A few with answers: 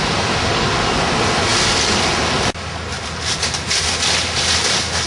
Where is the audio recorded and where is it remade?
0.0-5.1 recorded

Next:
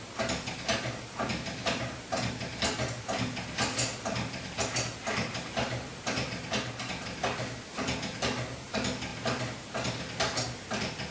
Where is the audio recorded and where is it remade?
0.0-11.1 recorded